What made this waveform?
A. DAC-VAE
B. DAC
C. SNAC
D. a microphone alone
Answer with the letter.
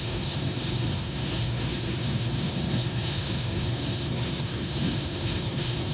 C